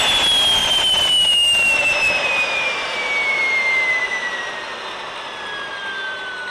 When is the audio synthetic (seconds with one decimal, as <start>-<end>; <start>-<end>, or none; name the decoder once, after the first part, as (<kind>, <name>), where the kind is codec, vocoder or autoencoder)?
0.6-4.5 (vocoder, BigVGAN v2)